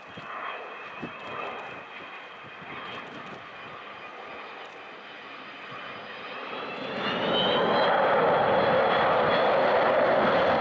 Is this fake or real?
real